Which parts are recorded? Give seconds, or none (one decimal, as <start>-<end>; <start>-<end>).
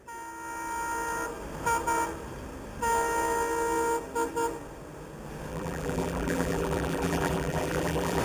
0.0-5.5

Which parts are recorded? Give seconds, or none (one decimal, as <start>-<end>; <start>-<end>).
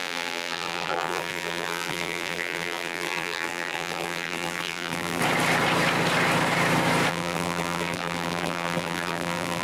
5.2-7.1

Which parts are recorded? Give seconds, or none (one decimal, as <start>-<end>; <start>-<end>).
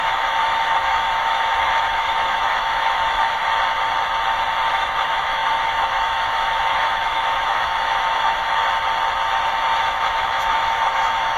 3.4-4.7; 8.6-9.8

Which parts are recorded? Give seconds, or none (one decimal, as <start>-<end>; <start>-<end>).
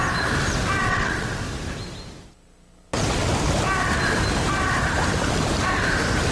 0.0-0.8; 1.4-6.3